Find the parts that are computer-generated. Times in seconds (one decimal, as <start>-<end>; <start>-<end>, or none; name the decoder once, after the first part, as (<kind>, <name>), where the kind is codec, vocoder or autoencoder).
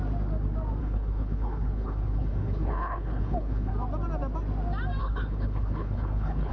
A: 0.8-3.7 (codec, HILCodec); 5.0-6.5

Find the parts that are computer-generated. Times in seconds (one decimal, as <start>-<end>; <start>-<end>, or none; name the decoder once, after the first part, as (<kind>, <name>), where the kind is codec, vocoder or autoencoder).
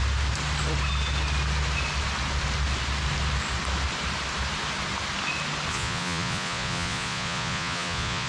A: 5.7-8.3 (vocoder, Vocos)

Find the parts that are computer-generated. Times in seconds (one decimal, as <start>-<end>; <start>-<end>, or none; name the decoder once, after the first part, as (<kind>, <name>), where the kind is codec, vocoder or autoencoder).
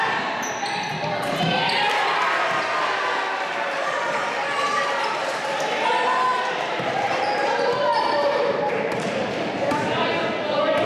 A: 6.3-9.7 (vocoder, BigVGAN v2)